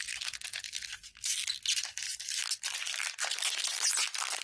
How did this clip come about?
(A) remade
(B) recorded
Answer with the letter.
A